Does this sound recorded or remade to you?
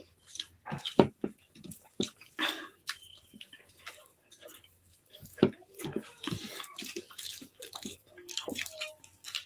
remade